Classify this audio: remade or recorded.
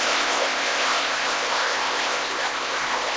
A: remade